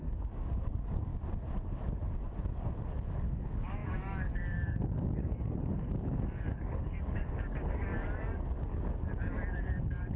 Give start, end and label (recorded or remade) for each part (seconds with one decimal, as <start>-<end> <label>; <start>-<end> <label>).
0.0-1.1 remade; 1.1-2.1 recorded; 2.1-10.2 remade

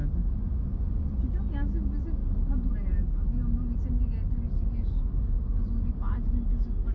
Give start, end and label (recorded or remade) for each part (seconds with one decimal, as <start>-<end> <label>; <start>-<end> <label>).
0.0-6.9 recorded

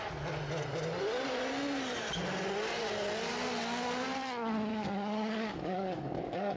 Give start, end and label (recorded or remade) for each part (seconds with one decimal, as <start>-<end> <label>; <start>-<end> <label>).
0.0-4.7 recorded; 4.7-6.6 remade

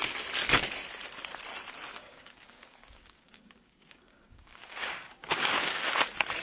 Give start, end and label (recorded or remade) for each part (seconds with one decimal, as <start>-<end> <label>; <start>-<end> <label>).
0.0-2.0 recorded; 2.0-5.8 remade; 5.8-6.4 recorded

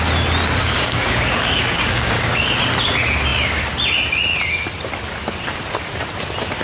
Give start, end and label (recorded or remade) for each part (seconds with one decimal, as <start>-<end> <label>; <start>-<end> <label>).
0.0-0.6 recorded; 0.6-2.5 remade; 2.5-6.6 recorded

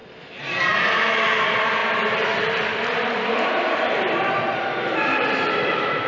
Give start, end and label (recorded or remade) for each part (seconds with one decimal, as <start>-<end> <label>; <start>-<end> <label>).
0.0-6.1 recorded

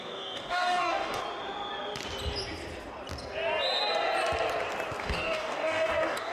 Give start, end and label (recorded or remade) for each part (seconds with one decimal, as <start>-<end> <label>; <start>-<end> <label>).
0.0-1.2 remade; 1.2-5.0 recorded; 5.0-6.3 remade